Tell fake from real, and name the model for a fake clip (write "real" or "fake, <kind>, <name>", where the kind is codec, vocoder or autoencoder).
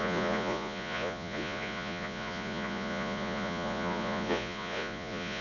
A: fake, vocoder, Vocos